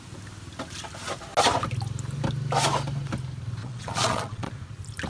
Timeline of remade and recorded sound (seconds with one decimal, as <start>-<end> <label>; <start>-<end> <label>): 0.0-3.6 recorded; 3.6-4.5 remade; 4.5-5.1 recorded